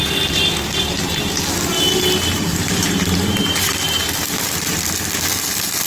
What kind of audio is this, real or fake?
real